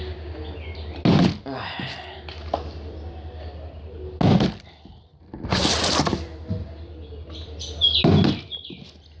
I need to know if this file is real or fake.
real